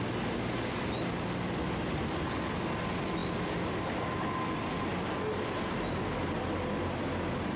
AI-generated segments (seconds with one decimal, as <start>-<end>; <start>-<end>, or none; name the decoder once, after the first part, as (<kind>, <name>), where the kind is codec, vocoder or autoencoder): none